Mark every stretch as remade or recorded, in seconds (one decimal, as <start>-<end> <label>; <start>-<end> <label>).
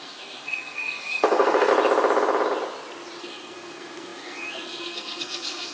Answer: 0.0-1.7 remade; 1.7-3.2 recorded; 3.2-5.7 remade